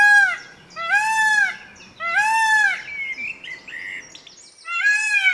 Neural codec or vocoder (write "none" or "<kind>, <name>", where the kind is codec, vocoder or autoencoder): none